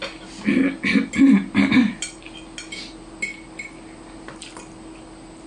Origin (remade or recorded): recorded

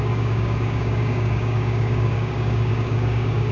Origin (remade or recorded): remade